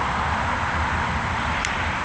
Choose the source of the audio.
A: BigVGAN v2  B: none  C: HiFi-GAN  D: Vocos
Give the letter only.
A